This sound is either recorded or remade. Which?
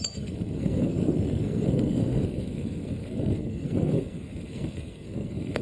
remade